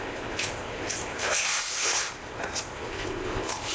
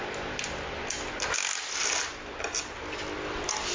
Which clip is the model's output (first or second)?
first